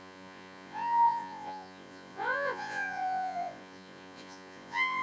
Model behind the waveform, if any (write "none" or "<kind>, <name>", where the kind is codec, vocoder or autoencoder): vocoder, Vocos